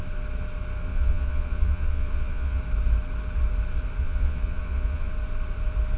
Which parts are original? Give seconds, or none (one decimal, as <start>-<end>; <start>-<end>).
0.0-0.9; 2.6-4.0; 5.1-6.0